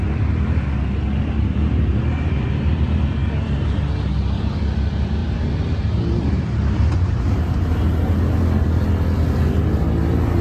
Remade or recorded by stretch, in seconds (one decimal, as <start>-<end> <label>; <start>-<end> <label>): 0.0-3.2 recorded; 3.2-3.9 remade; 3.9-5.2 recorded; 5.2-7.6 remade; 7.6-10.4 recorded